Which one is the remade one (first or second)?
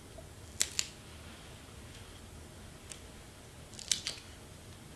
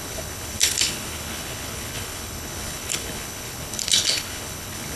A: second